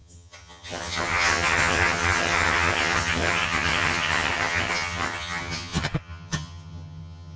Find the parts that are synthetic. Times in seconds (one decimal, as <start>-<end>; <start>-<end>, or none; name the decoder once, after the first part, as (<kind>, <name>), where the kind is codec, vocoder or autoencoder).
0.0-7.4 (vocoder, HiFi-GAN)